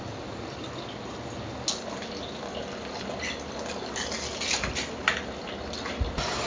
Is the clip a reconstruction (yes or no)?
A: no